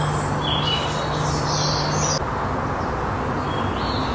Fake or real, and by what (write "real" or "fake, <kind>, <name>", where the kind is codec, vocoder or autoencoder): real